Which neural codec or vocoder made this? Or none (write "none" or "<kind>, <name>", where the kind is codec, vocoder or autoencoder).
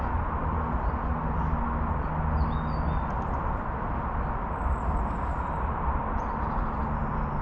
none